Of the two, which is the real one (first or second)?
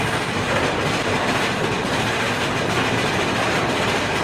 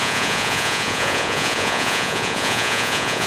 first